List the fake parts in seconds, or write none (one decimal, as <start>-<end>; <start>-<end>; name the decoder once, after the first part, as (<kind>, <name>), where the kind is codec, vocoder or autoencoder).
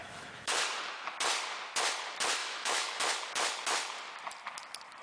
0.0-0.6 (autoencoder, DAC-VAE); 2.4-3.0